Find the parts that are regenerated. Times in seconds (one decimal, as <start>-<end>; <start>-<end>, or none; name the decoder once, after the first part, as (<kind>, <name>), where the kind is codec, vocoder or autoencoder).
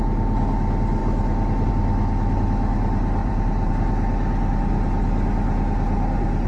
3.2-3.7 (vocoder, BigVGAN v2)